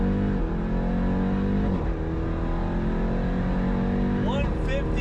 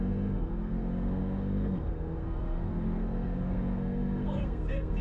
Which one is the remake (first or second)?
second